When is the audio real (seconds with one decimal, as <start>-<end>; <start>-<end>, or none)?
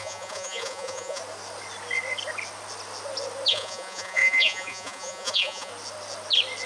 1.2-3.5; 5.7-6.7